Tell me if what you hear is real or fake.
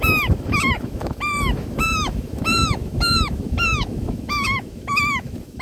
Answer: fake